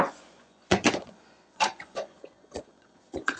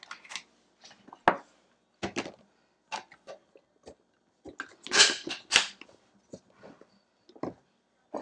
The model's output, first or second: first